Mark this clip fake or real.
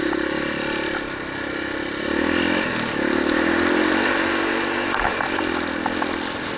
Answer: real